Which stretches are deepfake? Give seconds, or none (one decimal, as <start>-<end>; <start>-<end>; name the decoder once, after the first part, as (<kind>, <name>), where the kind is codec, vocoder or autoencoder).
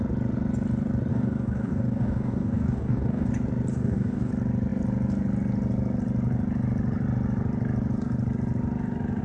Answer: 1.1-3.3 (codec, DAC); 3.7-4.3